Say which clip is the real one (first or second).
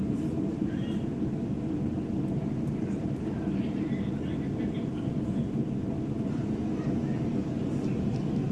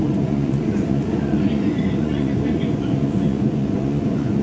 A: first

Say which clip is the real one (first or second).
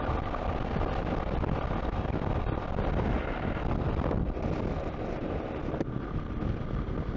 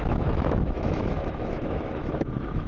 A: first